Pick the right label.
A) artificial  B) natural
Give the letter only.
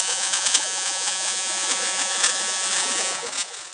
A